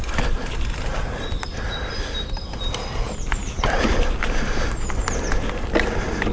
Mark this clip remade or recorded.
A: recorded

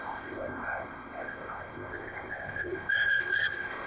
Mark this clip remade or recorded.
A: remade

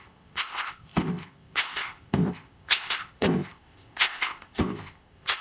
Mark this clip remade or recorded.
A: remade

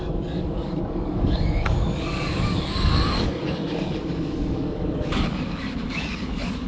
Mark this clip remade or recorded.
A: remade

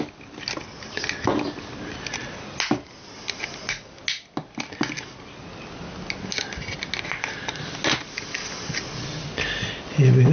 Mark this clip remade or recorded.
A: recorded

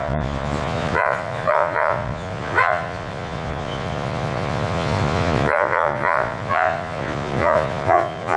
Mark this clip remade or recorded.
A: remade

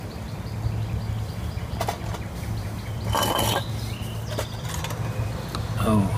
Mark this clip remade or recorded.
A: recorded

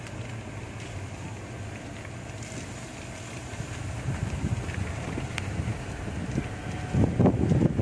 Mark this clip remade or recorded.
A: recorded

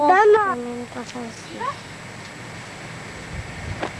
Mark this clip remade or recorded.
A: recorded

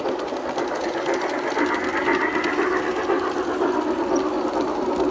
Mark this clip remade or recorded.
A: recorded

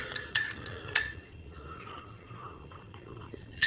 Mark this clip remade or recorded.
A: remade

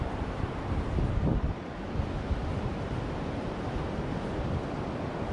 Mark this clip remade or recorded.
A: recorded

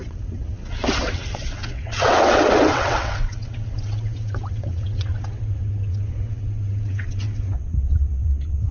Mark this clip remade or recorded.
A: remade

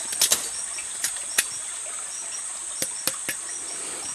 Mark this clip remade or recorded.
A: recorded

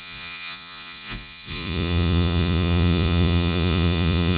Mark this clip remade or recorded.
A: remade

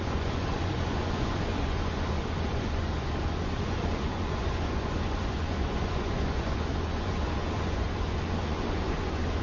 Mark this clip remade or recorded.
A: remade